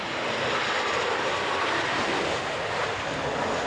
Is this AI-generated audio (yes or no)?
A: no